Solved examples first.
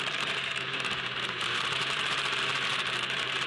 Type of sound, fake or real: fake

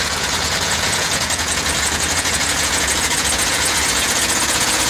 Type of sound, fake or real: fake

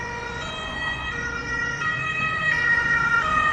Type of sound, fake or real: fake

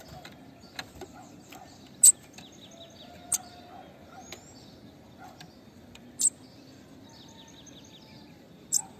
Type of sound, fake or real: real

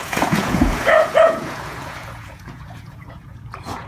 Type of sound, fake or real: fake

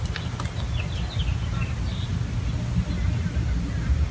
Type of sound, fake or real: real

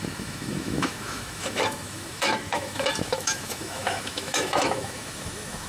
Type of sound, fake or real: fake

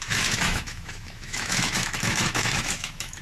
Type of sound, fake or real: fake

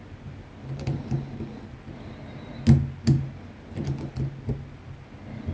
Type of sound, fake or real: real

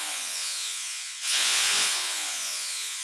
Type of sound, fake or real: fake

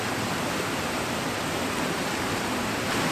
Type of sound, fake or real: real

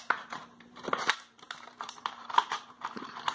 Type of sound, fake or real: fake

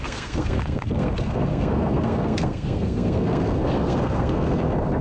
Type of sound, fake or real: fake